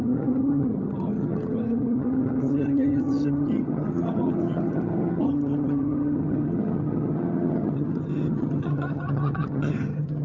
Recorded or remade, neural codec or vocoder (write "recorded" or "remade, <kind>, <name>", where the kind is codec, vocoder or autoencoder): remade, vocoder, HiFi-GAN